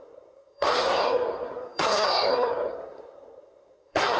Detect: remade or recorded remade